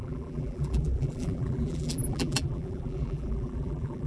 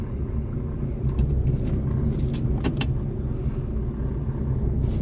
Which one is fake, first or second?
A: first